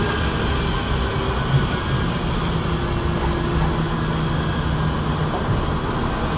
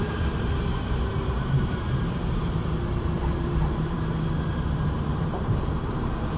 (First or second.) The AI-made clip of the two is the second